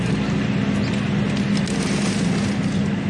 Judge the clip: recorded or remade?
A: recorded